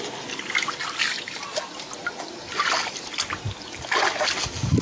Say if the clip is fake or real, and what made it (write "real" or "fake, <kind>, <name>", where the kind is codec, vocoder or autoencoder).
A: real